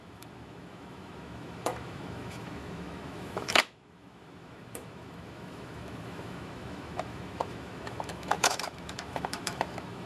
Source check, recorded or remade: remade